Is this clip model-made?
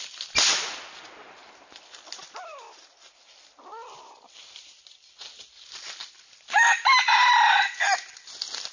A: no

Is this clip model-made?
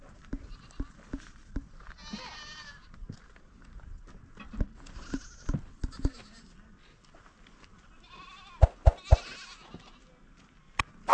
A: no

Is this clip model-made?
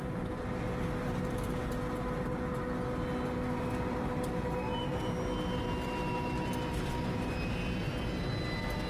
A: no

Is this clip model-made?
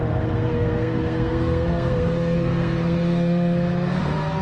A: yes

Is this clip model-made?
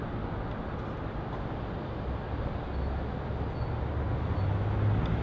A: no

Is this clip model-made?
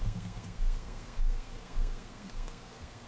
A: yes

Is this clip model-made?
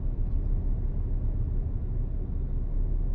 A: no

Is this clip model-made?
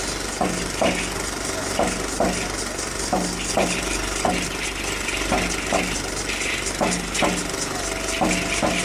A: no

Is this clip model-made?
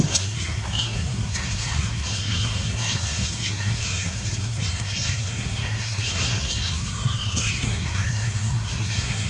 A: yes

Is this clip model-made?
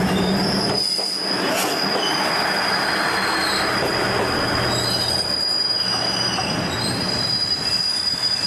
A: no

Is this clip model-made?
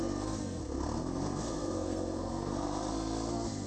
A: yes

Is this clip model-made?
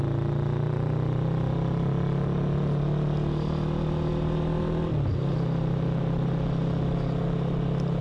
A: no